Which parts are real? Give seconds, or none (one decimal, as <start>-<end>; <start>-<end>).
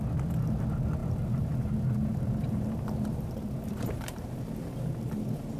0.0-1.0; 4.4-5.6